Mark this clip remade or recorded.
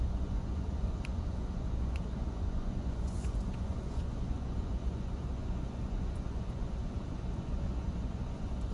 remade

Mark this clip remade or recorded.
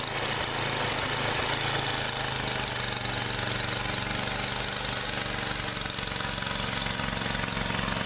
recorded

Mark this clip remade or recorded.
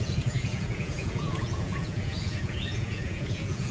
remade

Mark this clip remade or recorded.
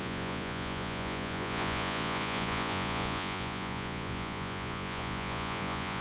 remade